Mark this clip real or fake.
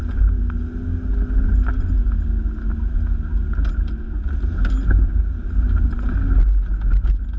real